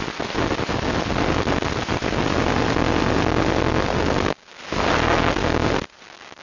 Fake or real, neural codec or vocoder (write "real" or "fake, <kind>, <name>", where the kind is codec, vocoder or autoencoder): real